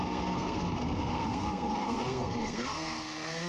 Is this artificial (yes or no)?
yes